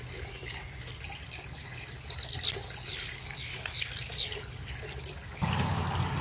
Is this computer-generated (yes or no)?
no